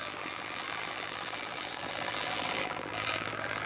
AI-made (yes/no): yes